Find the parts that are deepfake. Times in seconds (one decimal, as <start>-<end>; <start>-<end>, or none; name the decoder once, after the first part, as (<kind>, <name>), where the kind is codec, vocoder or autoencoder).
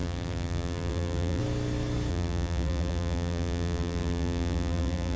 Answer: 0.0-1.4 (vocoder, BigVGAN v2); 2.1-5.2